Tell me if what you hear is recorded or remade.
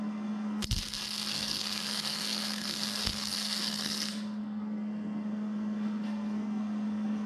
remade